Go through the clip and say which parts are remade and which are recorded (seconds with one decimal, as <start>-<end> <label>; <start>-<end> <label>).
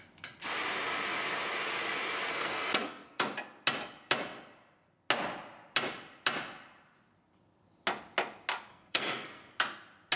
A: 0.0-2.3 recorded; 2.3-3.2 remade; 3.2-8.7 recorded; 8.7-9.5 remade; 9.5-10.2 recorded